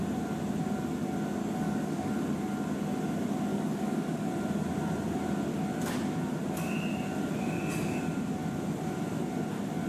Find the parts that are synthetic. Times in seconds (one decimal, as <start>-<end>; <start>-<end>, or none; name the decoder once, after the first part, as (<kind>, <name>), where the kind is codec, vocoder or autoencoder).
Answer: 1.4-2.1 (codec, DAC); 3.5-4.3